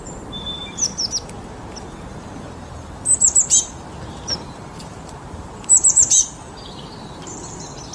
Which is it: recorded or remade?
remade